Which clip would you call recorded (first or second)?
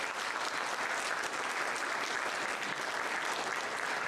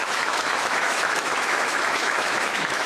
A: first